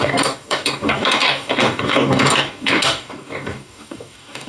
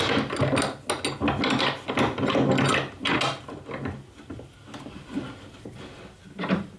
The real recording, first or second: second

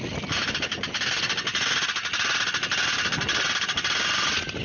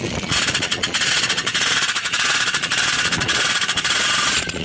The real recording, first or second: first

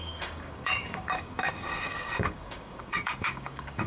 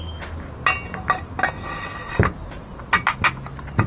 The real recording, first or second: second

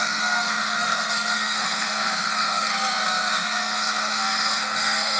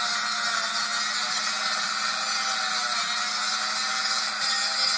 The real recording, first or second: second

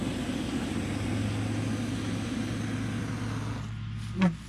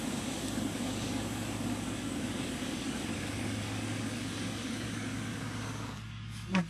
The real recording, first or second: first